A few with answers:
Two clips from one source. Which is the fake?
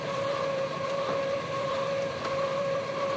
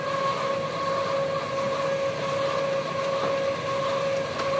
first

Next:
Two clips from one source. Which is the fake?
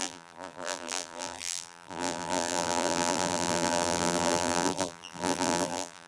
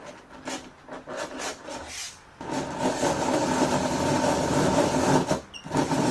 first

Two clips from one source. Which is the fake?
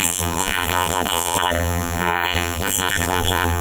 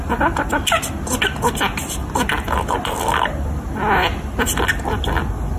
first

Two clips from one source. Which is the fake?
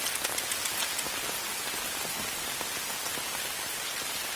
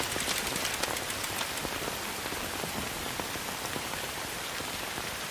second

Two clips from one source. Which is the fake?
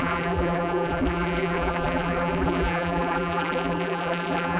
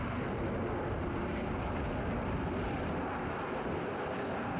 first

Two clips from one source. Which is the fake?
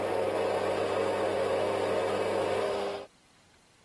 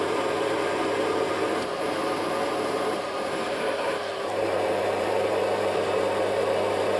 second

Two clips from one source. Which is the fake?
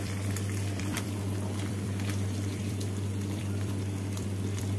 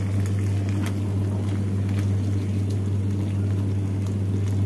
first